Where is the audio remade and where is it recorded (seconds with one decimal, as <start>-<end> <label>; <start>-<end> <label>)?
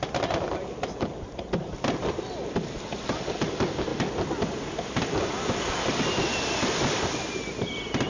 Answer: 0.0-3.9 recorded; 3.9-7.2 remade; 7.2-8.1 recorded